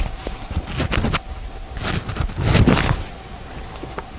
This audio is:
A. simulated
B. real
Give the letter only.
B